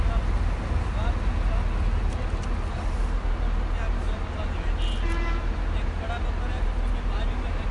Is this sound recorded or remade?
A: recorded